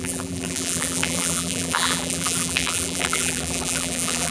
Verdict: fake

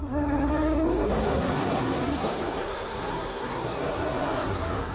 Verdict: fake